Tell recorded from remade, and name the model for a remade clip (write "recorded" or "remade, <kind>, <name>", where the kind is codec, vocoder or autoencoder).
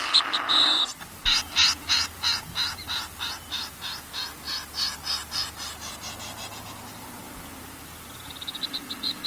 recorded